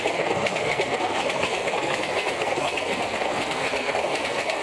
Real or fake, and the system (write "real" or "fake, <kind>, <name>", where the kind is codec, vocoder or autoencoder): fake, codec, SNAC